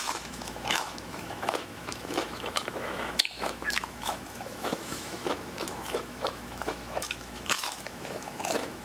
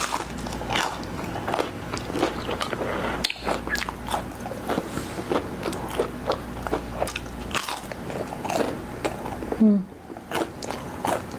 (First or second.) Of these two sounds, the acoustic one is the second